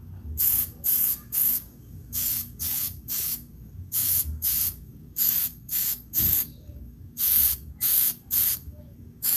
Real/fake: fake